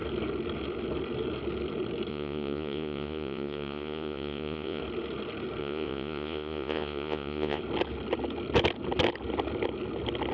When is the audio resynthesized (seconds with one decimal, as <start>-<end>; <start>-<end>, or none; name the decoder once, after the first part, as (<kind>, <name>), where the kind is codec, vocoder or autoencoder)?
2.1-4.8 (vocoder, Vocos); 5.6-7.6

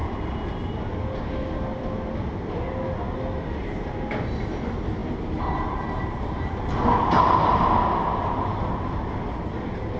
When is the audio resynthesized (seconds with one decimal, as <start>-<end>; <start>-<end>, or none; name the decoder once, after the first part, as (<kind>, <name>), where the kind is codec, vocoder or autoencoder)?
none